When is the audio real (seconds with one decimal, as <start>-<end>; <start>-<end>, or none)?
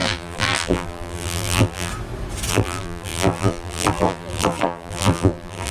1.9-2.5